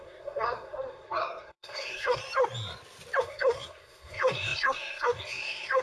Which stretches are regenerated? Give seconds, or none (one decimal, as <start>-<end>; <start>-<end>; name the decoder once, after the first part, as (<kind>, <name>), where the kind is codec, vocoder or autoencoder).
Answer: 0.0-2.2 (codec, SNAC); 3.2-5.8